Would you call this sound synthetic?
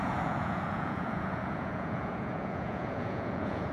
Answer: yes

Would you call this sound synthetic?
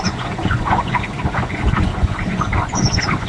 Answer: yes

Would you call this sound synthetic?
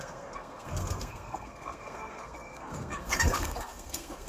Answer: yes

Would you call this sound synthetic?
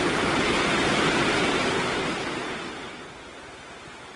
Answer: no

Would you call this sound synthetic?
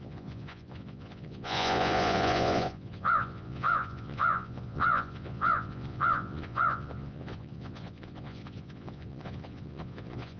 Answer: yes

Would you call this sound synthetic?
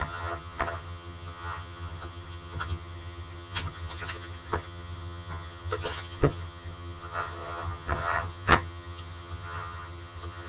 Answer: yes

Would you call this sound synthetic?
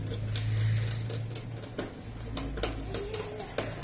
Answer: no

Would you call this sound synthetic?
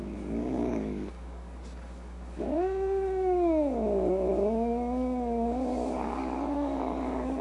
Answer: yes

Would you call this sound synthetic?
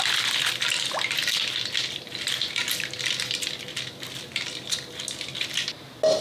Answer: no